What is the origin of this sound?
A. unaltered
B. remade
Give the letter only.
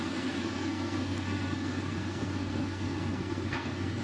B